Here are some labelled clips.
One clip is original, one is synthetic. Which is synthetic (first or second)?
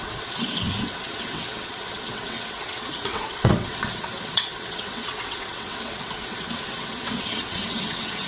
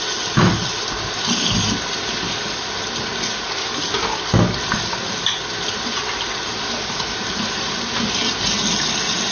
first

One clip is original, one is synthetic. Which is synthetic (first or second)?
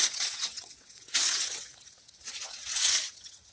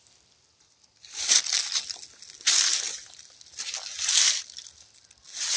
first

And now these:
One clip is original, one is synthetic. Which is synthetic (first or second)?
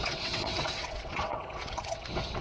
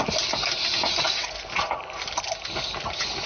first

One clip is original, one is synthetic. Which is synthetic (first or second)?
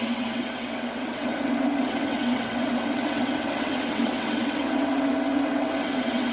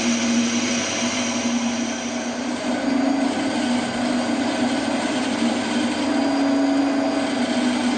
first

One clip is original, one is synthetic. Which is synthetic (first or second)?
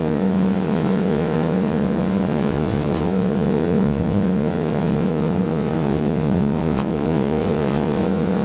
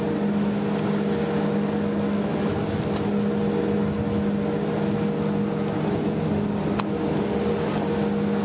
first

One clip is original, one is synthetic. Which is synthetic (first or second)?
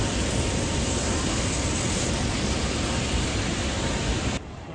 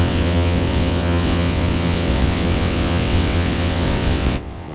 second